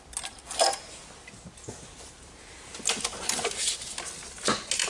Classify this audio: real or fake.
real